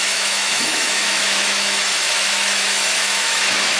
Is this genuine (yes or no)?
no